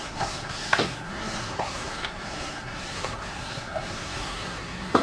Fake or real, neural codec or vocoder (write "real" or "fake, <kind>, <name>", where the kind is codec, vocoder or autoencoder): fake, codec, SNAC